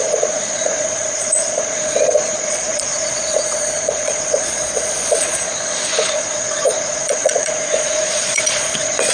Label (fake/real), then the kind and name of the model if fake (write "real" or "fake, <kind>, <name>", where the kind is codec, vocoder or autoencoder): fake, vocoder, Vocos